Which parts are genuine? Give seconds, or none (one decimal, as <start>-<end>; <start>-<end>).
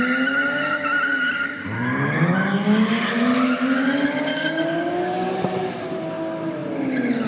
0.0-4.3; 5.3-7.3